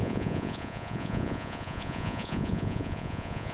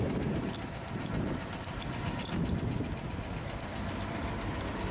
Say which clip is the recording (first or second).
second